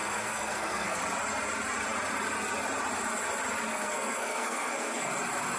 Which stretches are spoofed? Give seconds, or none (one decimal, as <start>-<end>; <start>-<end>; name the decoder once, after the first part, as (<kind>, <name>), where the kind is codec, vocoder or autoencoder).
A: 0.0-1.0 (codec, SNAC); 3.7-5.1